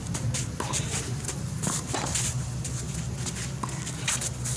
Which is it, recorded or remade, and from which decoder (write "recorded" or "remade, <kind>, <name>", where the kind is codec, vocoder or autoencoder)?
recorded